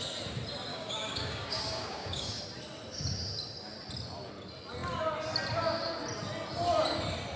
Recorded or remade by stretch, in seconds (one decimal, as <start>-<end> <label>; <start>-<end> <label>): 0.0-0.7 recorded; 0.7-2.4 remade; 2.4-7.4 recorded